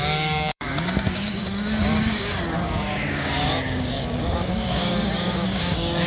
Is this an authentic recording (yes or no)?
no